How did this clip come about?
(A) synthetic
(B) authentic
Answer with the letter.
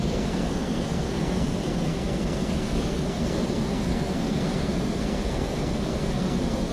A